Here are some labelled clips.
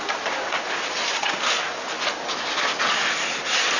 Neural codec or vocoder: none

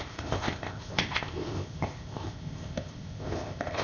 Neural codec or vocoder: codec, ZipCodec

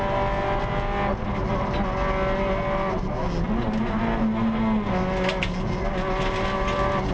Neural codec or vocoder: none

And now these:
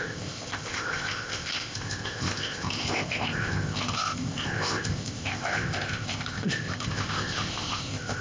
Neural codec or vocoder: codec, ZipCodec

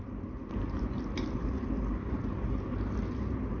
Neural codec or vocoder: none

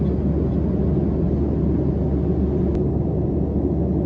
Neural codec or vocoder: none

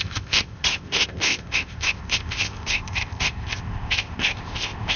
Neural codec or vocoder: codec, ZipCodec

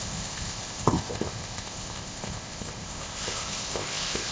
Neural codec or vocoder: codec, ZipCodec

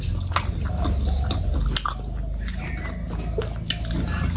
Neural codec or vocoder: none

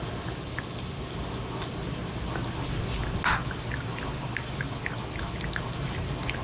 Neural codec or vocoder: none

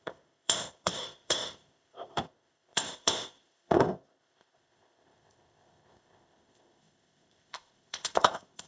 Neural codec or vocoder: codec, ZipCodec